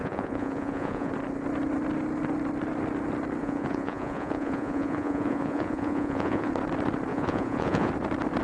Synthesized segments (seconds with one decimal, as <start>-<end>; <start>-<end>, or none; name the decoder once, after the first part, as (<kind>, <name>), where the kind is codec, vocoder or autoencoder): 0.0-1.1 (vocoder, Vocos); 3.4-6.5; 7.1-7.9